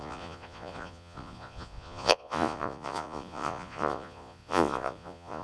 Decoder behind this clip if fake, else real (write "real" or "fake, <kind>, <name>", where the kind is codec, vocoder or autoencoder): fake, vocoder, Vocos